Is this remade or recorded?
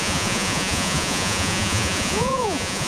remade